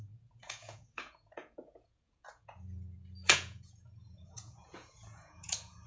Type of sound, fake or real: fake